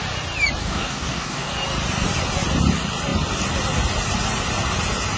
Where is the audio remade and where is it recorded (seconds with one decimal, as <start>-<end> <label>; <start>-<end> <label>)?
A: 0.0-0.6 recorded; 0.6-1.5 remade; 1.5-5.2 recorded